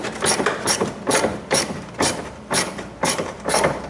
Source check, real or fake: fake